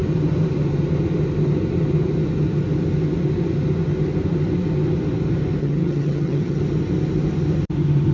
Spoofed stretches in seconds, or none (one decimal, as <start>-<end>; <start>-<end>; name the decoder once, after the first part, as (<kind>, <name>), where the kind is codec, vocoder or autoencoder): 5.6-6.6 (vocoder, HiFi-GAN)